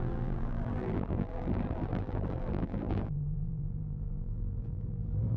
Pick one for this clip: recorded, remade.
remade